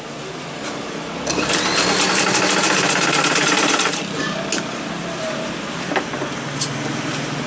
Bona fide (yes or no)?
yes